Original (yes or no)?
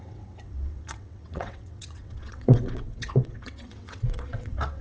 no